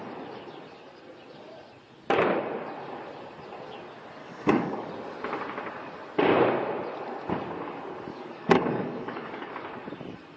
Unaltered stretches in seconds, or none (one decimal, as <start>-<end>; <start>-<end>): 0.0-4.2; 4.9-8.1; 9.5-10.4